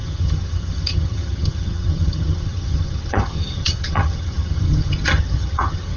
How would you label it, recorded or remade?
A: remade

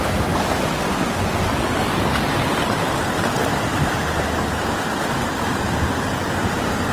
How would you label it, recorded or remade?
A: recorded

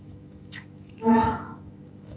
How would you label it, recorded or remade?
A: remade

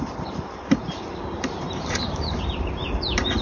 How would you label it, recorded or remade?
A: remade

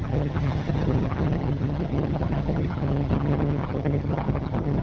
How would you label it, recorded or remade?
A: remade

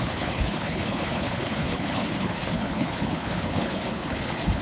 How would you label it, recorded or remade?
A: remade